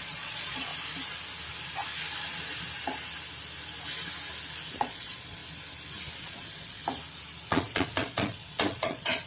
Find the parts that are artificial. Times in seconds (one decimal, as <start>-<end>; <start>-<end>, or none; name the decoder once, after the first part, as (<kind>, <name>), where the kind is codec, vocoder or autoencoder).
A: 0.0-0.7 (vocoder, Vocos); 4.8-5.4; 6.2-6.8; 7.5-9.3